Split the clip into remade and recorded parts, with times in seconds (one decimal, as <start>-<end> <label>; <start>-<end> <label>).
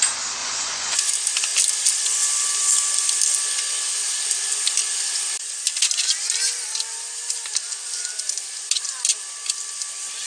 0.0-0.4 recorded; 0.4-1.1 remade; 1.1-10.3 recorded